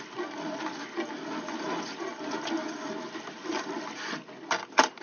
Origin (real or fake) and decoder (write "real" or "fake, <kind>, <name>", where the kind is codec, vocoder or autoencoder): fake, vocoder, BigVGAN v2